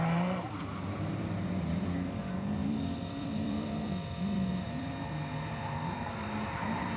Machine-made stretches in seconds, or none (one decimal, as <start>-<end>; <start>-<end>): 2.6-5.0

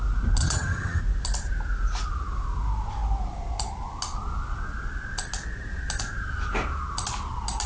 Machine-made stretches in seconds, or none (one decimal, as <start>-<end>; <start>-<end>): 0.4-1.0

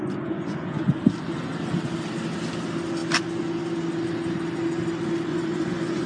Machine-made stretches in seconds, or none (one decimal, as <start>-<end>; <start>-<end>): 0.0-0.9; 5.3-6.1

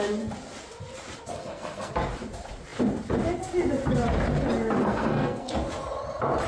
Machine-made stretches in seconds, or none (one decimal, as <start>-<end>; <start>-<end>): 1.3-1.9; 4.8-5.5

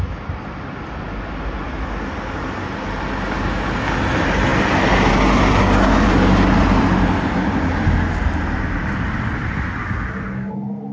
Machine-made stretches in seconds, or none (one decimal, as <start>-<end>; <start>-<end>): none

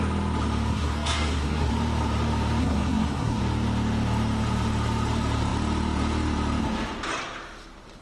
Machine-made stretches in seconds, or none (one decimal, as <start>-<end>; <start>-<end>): 0.7-1.7; 2.6-3.4

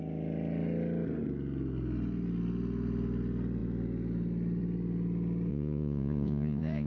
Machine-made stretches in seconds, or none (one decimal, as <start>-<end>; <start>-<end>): 5.5-6.9

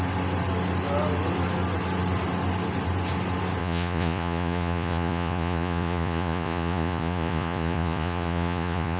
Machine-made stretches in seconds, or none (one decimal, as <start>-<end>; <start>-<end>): 3.6-9.0